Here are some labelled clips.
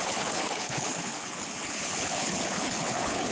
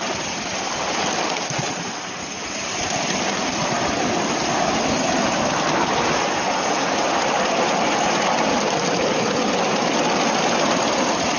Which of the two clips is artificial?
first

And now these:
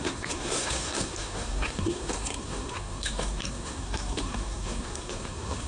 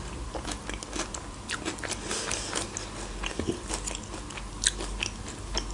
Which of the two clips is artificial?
first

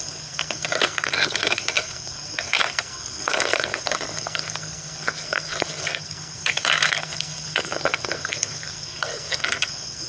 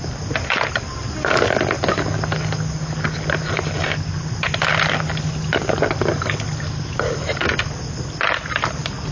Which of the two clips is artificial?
first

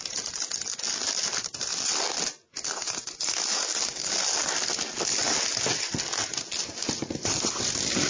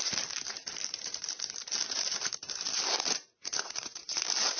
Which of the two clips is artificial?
second